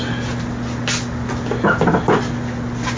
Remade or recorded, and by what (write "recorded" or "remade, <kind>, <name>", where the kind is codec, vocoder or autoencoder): recorded